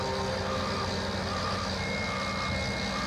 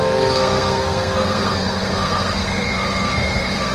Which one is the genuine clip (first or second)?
first